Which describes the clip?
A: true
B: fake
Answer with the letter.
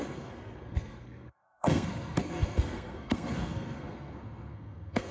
B